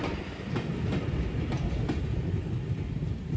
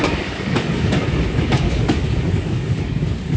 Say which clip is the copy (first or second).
second